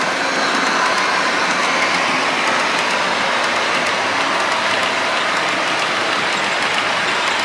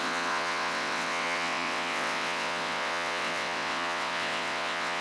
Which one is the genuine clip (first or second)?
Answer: first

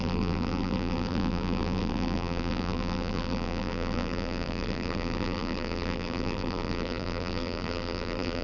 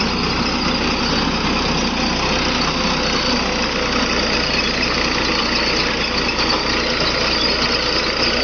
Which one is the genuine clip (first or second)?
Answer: second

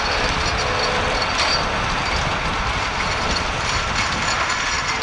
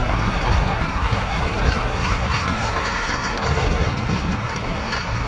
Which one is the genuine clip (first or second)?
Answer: first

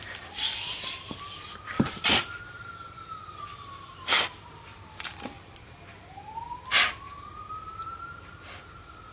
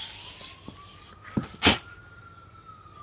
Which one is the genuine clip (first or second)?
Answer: second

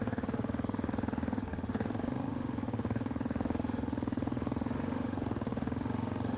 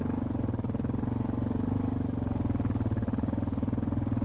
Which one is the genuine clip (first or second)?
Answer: second